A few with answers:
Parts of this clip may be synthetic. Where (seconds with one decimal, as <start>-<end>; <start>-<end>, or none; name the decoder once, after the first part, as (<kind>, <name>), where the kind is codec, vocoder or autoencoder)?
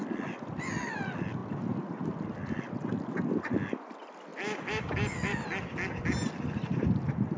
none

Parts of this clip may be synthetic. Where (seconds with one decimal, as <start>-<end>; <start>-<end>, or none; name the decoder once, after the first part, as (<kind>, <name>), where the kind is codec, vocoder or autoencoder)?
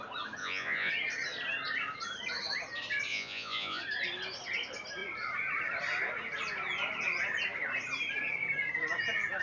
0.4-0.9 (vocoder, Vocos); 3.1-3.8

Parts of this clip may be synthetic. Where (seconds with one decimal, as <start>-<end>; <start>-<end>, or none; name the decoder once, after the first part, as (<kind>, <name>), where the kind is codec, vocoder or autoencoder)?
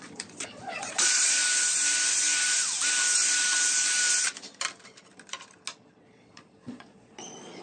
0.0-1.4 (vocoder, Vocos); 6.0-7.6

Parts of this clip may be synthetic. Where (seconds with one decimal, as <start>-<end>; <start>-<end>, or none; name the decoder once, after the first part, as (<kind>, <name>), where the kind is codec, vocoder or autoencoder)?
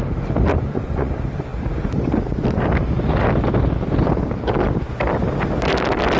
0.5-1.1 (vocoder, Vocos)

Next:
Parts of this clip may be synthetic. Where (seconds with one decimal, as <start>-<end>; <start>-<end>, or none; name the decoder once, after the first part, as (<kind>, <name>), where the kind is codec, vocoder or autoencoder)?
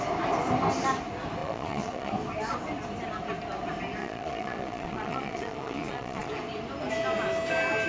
1.4-2.1 (vocoder, Vocos); 4.0-6.3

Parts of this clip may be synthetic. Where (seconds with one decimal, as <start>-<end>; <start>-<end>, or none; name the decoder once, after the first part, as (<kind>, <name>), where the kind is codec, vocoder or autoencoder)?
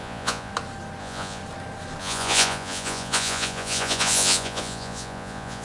0.0-0.5 (vocoder, Vocos); 1.0-1.4; 2.0-5.6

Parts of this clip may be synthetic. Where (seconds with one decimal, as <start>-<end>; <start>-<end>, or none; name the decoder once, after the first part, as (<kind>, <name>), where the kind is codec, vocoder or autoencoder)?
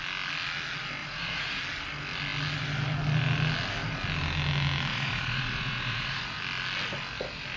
1.0-1.6 (vocoder, Vocos); 4.9-6.4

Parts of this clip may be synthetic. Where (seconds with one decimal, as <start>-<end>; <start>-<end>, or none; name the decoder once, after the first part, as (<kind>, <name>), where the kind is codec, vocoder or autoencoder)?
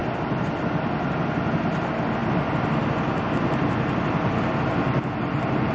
none